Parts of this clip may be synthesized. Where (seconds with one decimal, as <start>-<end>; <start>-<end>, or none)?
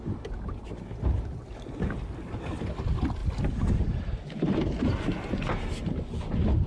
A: none